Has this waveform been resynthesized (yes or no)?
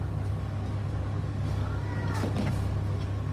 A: yes